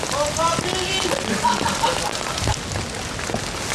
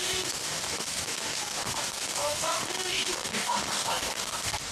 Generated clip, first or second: second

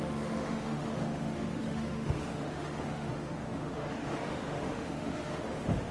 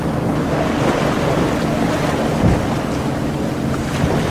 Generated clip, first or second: first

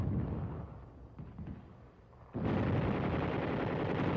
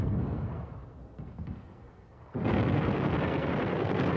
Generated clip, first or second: second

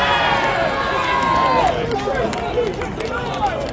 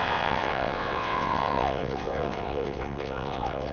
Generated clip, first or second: second